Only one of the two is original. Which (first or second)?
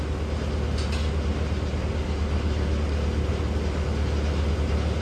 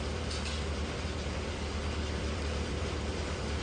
first